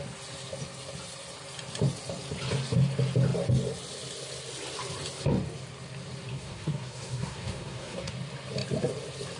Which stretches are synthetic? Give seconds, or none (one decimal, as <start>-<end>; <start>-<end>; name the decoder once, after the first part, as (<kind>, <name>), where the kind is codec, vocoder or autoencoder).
6.3-8.1 (codec, SNAC)